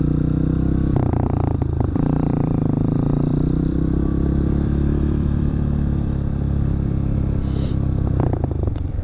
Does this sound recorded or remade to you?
remade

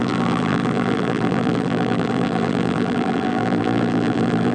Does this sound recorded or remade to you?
remade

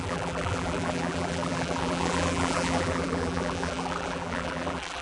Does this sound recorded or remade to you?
remade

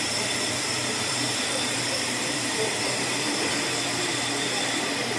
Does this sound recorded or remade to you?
remade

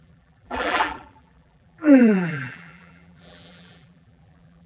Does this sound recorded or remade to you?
remade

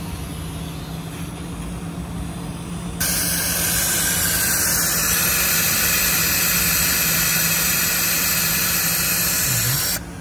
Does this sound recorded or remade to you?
recorded